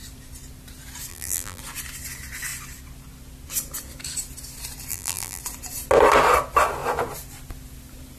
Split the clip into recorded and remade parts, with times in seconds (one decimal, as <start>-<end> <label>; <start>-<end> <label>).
0.0-1.1 recorded; 1.1-1.6 remade; 1.6-4.9 recorded; 4.9-5.4 remade; 5.4-8.2 recorded